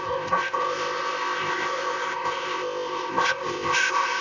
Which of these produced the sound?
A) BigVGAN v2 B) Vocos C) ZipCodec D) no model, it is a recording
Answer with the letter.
C